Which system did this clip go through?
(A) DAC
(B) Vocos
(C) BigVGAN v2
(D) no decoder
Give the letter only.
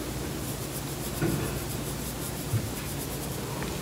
D